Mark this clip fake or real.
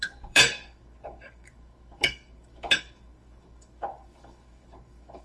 fake